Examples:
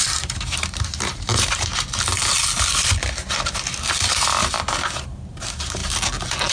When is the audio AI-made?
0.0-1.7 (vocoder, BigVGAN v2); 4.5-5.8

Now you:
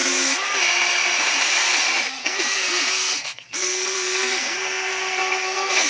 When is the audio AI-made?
2.2-5.9 (codec, SNAC)

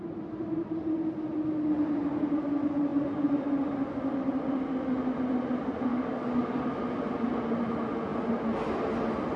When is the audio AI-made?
5.9-6.6 (codec, DAC)

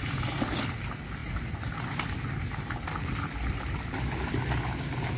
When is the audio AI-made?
none

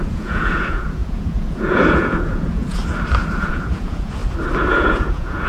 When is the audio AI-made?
0.0-2.8 (vocoder, Vocos); 3.5-4.2; 4.7-5.5

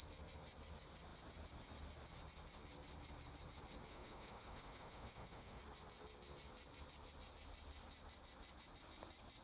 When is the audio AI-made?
3.9-5.6 (autoencoder, DAC-VAE)

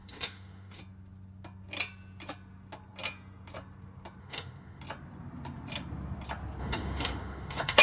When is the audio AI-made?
0.0-0.8 (autoencoder, DAC-VAE); 4.2-4.8; 6.6-7.8